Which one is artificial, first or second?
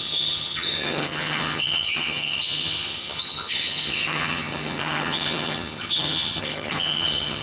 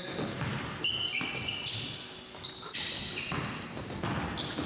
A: first